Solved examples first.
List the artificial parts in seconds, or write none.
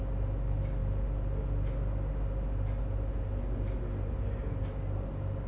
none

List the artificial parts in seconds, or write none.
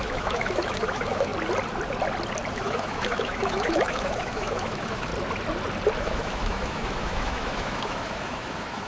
0.0-1.3 (autoencoder, DAC-VAE); 2.5-5.1; 6.0-8.9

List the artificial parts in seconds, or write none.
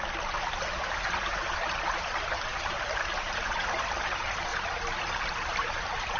none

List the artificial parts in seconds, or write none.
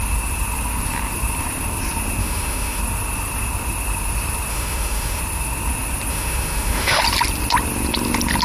2.2-2.8 (autoencoder, DAC-VAE); 4.5-5.2; 6.1-7.0